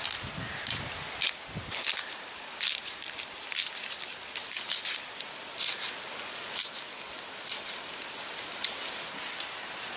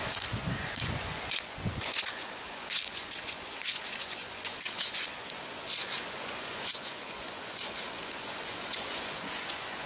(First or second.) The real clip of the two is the first